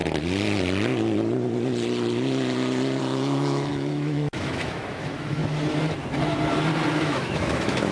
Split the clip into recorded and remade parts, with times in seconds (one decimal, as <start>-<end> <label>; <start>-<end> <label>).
0.0-3.0 recorded; 3.0-5.4 remade; 5.4-6.9 recorded; 6.9-7.9 remade